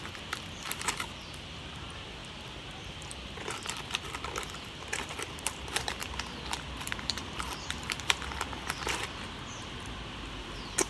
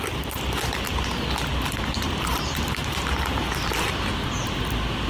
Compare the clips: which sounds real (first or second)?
second